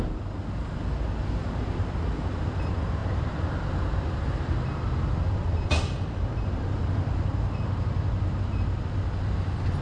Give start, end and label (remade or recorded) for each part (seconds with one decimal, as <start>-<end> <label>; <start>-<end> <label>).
0.0-9.8 recorded